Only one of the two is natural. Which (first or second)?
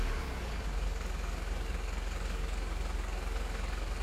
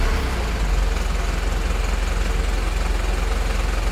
second